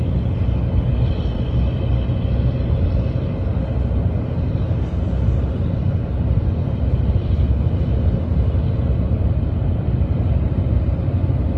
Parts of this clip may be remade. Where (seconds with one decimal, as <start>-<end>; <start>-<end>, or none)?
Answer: 5.8-10.7